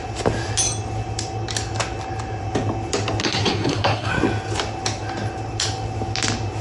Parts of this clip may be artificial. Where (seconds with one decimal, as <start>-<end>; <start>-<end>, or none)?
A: 3.2-4.1